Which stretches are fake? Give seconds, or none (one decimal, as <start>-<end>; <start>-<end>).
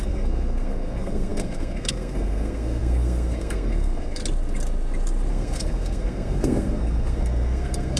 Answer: 0.0-4.2; 5.3-8.0